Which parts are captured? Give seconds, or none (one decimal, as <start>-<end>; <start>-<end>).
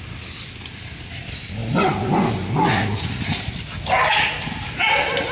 0.0-5.3